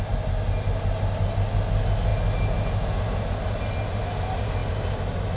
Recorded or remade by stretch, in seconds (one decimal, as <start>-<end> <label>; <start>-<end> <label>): 0.0-5.4 recorded